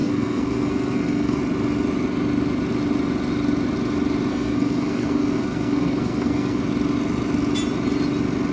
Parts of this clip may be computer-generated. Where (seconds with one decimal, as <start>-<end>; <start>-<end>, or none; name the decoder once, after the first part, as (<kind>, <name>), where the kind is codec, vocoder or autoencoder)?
0.0-1.4 (codec, SNAC); 4.3-6.6